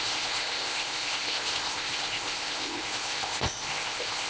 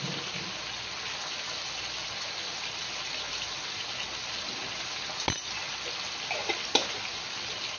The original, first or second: second